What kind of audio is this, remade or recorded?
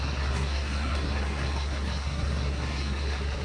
remade